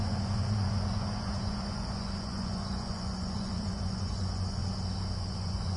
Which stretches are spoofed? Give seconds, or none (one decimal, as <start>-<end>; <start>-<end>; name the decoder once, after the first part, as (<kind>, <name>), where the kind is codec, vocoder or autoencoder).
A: 0.0-4.6 (vocoder, Vocos); 5.2-5.8